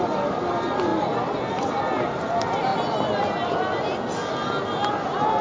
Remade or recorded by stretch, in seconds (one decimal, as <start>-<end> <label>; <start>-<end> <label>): 0.0-5.4 recorded